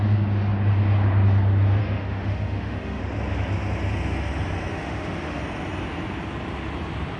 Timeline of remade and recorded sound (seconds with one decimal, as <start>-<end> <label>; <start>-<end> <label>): 0.0-1.8 recorded; 1.8-3.0 remade; 3.0-4.7 recorded; 4.7-5.4 remade; 5.4-7.2 recorded